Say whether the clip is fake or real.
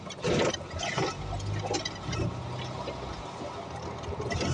real